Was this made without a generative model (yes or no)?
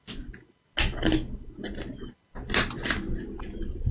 yes